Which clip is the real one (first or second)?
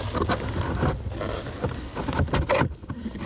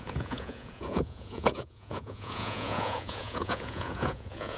first